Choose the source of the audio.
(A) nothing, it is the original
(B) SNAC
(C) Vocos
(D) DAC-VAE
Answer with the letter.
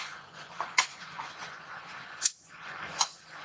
C